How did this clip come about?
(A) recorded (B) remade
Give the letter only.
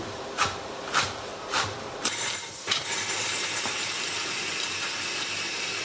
B